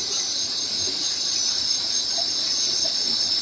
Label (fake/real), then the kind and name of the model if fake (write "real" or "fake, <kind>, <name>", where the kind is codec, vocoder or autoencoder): real